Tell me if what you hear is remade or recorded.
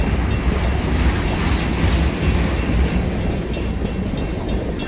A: recorded